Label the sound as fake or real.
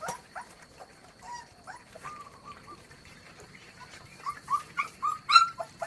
fake